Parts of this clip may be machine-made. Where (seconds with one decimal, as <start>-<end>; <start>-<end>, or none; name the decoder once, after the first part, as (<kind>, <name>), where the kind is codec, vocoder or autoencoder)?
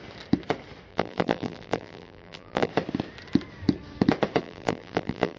0.9-2.7 (vocoder, BigVGAN v2); 4.4-5.4